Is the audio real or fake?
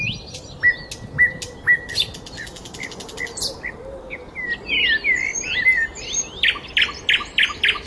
real